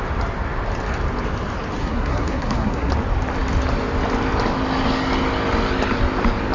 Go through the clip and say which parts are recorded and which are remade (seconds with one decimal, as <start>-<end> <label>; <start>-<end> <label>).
0.0-1.8 recorded; 1.8-2.9 remade; 2.9-6.5 recorded